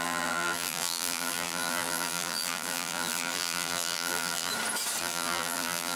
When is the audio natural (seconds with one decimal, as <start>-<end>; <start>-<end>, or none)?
4.5-5.0